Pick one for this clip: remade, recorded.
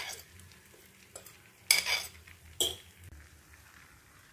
recorded